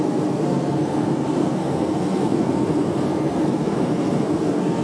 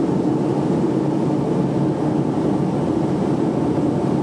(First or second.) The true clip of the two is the second